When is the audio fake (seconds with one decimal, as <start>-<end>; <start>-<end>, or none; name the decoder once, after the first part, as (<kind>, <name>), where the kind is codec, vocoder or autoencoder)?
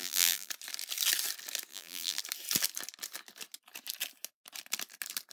0.0-0.5 (vocoder, BigVGAN v2); 1.7-2.2